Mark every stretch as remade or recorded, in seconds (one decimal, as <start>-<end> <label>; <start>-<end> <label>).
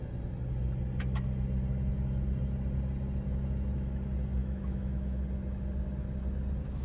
0.0-4.4 recorded; 4.4-5.2 remade; 5.2-6.8 recorded